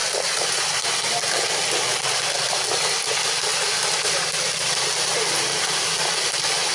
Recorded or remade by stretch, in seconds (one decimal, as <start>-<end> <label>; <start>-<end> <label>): 0.0-6.7 recorded